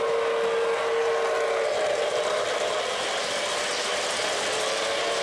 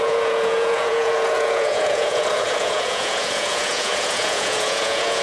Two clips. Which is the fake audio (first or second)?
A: second